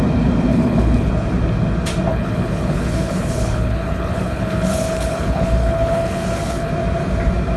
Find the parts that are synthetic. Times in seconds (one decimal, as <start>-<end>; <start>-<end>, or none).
0.5-1.1; 2.1-6.7